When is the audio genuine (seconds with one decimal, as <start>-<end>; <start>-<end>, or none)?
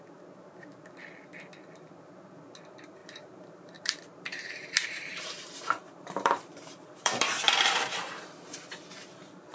0.0-3.0; 8.2-9.5